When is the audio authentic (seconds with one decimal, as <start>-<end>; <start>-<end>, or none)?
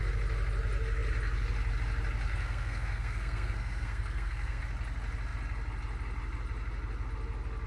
0.0-2.3; 4.6-7.7